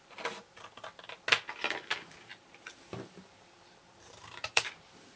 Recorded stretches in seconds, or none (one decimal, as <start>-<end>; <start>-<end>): 0.0-2.3; 4.7-5.2